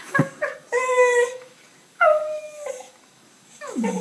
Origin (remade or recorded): remade